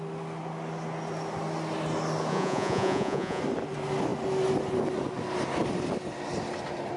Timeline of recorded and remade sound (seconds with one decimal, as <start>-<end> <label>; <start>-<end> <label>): 0.0-2.3 recorded; 2.3-3.4 remade; 3.4-7.0 recorded